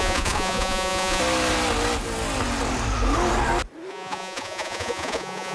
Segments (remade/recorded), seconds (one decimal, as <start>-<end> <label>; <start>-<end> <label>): 0.0-1.2 remade; 1.2-3.9 recorded; 3.9-5.5 remade

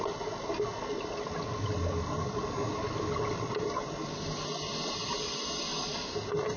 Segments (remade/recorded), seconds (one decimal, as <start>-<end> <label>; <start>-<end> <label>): 0.0-6.6 recorded

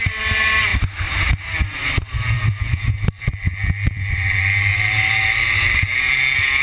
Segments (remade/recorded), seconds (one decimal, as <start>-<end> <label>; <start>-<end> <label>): 0.0-6.6 recorded

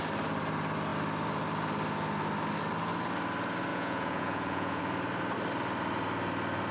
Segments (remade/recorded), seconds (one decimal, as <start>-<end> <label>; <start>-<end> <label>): 0.0-3.7 recorded; 3.7-4.8 remade; 4.8-6.7 recorded

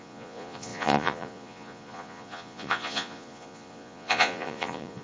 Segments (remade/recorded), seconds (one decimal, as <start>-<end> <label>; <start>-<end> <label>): 0.0-5.0 remade

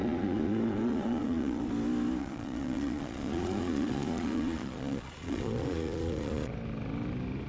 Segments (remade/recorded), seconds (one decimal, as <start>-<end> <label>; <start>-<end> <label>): 0.0-1.6 remade; 1.6-2.2 recorded; 2.2-6.5 remade; 6.5-7.5 recorded